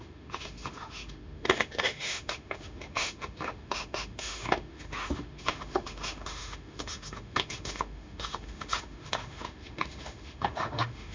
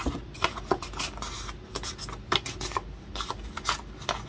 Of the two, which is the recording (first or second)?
second